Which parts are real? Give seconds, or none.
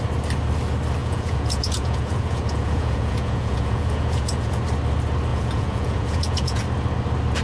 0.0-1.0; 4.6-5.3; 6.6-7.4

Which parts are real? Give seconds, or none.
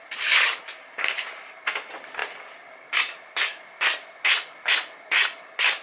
0.0-5.8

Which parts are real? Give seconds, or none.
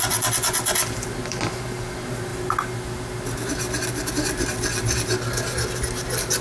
0.0-6.4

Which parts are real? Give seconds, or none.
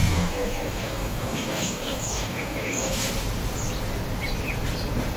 3.1-5.2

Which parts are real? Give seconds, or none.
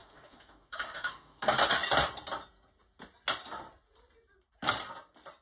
1.4-5.4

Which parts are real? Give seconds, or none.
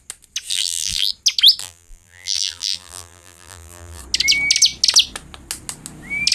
0.0-0.5; 1.1-1.6; 4.0-6.3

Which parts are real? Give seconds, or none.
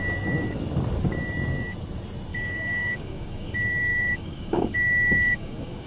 0.0-2.3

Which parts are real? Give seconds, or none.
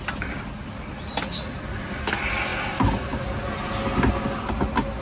0.0-5.0